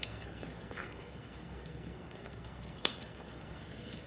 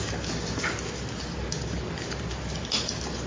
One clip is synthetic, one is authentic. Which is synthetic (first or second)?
first